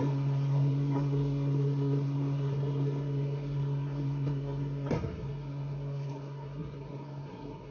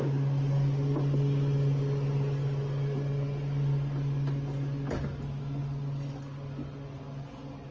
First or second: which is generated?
first